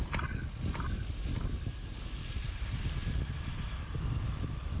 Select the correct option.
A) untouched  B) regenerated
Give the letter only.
A